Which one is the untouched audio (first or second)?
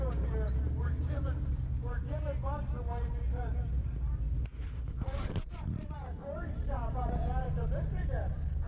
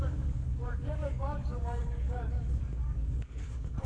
first